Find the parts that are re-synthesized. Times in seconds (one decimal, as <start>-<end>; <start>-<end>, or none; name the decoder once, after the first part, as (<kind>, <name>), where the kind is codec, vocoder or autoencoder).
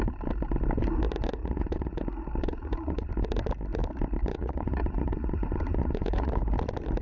1.4-2.0 (vocoder, Vocos); 2.4-3.1; 4.3-6.3